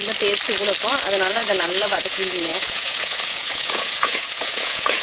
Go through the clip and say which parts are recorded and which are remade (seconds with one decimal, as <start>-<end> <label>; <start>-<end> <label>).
0.0-1.3 recorded; 1.3-5.0 remade